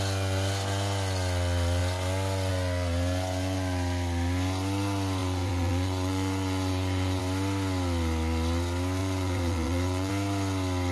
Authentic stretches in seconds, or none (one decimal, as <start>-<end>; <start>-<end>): 0.0-5.2; 7.2-9.0; 10.1-10.9